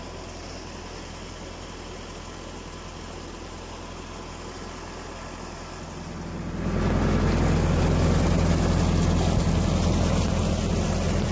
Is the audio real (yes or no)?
yes